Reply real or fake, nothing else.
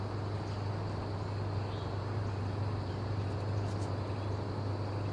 real